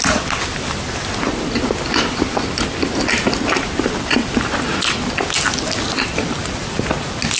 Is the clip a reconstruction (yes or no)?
no